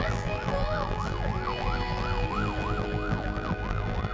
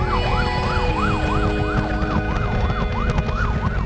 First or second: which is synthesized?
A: first